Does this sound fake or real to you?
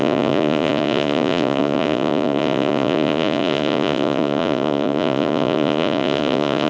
fake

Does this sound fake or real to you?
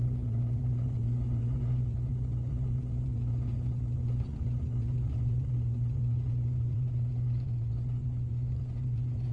fake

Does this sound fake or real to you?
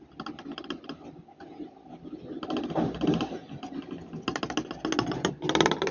real